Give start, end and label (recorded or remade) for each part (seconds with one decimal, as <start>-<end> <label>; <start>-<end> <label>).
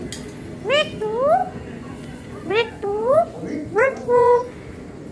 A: 0.0-1.4 recorded; 1.4-4.5 remade; 4.5-5.1 recorded